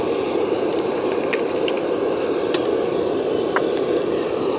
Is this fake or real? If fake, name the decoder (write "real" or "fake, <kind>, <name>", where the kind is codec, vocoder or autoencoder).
real